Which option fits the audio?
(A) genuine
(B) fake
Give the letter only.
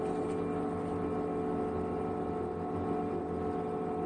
A